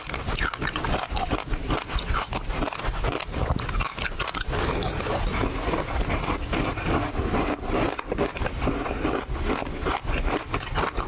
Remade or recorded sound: recorded